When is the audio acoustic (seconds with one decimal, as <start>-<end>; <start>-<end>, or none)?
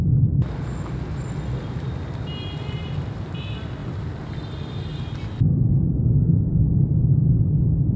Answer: 0.0-3.8; 6.1-6.5; 7.4-8.0